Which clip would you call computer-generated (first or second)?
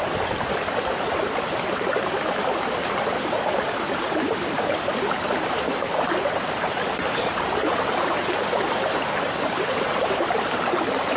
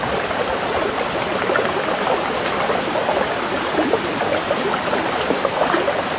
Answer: first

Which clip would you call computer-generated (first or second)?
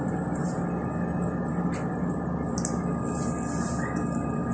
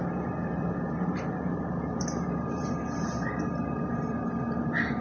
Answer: second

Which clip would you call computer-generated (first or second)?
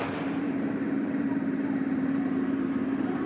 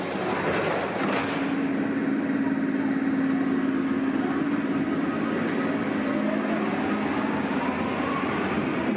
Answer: first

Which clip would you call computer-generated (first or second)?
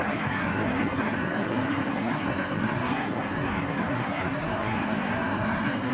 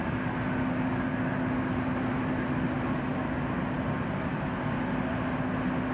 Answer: first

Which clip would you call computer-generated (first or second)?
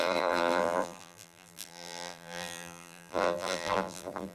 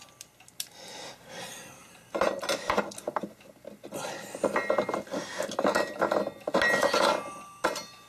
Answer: first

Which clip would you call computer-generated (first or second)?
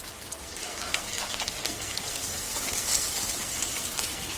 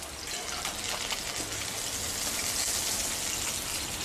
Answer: first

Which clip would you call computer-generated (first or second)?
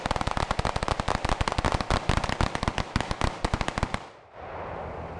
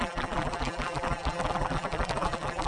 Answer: second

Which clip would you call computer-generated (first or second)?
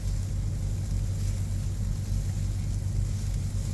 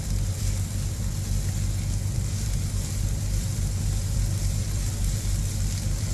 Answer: second